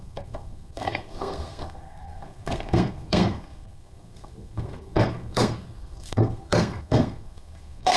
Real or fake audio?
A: fake